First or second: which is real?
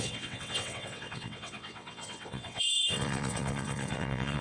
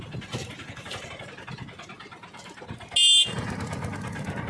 second